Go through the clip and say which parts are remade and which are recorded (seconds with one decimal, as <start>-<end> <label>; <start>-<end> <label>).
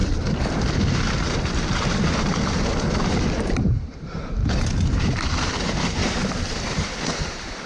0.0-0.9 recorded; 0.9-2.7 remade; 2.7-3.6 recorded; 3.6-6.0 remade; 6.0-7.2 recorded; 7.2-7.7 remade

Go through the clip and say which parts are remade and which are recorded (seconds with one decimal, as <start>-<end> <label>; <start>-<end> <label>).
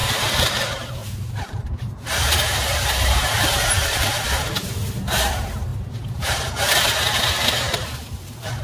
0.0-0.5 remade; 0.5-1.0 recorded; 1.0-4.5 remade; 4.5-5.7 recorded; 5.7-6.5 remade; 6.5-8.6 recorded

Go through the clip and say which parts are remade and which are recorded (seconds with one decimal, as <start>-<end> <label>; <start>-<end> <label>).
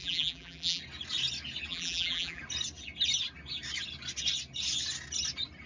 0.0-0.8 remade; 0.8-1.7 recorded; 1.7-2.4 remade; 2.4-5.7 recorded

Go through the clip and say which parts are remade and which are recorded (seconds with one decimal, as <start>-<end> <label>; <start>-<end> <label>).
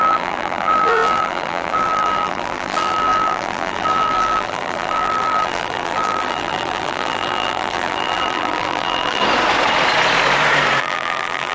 0.0-9.2 remade; 9.2-10.8 recorded; 10.8-11.5 remade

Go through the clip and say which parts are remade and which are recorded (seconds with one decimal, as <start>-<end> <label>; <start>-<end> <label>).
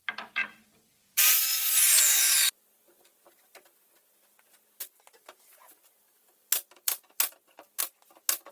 0.0-8.5 remade